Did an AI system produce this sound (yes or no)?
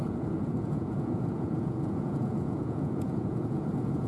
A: yes